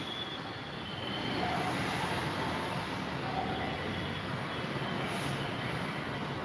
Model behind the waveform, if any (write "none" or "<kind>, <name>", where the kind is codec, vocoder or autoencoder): none